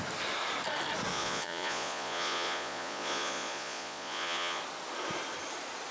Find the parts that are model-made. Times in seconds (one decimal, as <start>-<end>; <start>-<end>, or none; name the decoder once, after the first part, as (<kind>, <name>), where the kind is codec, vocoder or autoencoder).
1.1-4.6 (vocoder, Vocos)